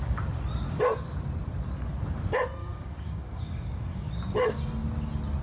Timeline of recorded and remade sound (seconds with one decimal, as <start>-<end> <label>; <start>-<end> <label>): 0.0-2.6 recorded; 2.6-4.1 remade; 4.1-5.4 recorded